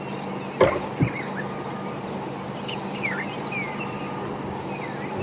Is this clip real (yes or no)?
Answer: yes